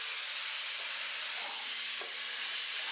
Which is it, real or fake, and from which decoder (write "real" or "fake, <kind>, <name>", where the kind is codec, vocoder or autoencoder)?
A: real